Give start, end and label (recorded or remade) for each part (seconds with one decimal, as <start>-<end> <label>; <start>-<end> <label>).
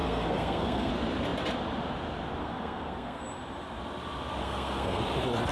0.0-0.9 remade; 0.9-2.4 recorded; 2.4-3.2 remade; 3.2-4.4 recorded; 4.4-5.0 remade; 5.0-5.5 recorded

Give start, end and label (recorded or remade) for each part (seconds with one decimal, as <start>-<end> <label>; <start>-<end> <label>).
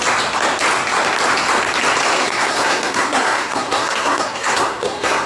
0.0-2.2 recorded; 2.2-5.3 remade